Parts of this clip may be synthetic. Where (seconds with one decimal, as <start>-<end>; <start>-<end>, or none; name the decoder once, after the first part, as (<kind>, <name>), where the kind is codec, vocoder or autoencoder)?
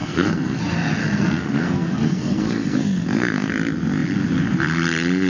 0.0-0.6 (codec, SNAC); 1.0-3.5